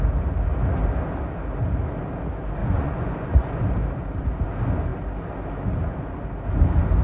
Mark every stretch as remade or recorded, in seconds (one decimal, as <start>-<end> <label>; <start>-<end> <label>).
0.0-2.6 recorded; 2.6-3.6 remade; 3.6-7.0 recorded